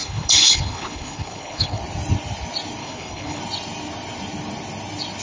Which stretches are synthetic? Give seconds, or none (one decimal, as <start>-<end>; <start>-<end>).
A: 0.0-1.8; 2.8-3.4